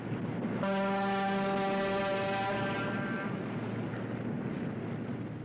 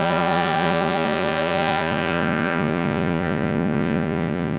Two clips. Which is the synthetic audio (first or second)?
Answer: second